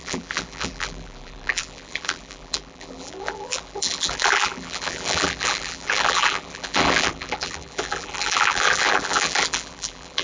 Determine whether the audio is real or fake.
fake